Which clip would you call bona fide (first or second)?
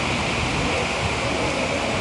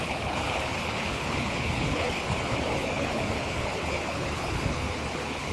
first